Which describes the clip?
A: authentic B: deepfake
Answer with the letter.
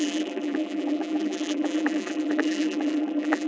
B